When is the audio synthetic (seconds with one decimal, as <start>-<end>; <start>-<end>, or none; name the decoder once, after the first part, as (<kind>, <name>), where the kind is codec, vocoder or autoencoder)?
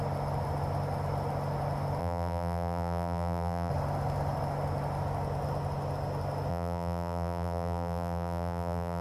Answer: 2.0-3.7 (vocoder, BigVGAN v2); 6.5-9.0